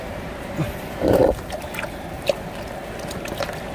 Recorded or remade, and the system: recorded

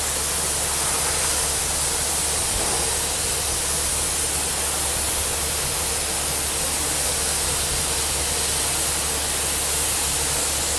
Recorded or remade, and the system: recorded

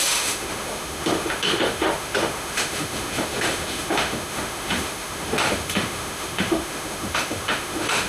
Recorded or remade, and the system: remade, autoencoder, DAC-VAE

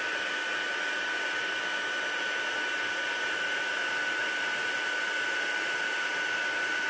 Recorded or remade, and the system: recorded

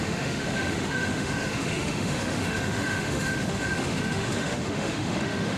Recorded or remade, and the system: remade, autoencoder, DAC-VAE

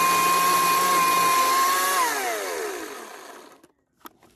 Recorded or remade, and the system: recorded